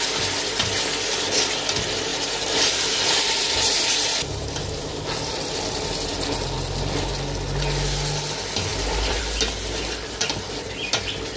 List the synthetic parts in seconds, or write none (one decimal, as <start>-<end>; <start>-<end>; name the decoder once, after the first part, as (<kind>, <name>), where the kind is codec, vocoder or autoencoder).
2.1-4.1 (vocoder, BigVGAN v2); 8.7-9.2